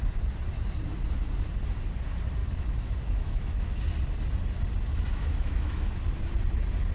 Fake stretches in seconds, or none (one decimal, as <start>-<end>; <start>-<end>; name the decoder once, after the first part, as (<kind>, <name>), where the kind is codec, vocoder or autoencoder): 2.4-3.8 (autoencoder, DAC-VAE); 5.1-6.0